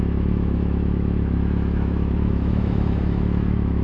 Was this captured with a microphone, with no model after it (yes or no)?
no